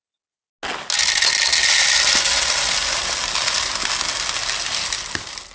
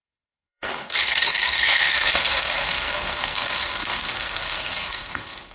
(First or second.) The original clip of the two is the first